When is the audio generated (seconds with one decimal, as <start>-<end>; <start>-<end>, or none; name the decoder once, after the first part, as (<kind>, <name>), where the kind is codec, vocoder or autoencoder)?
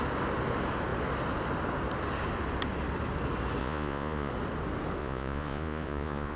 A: 3.6-4.3 (vocoder, Vocos); 5.0-6.4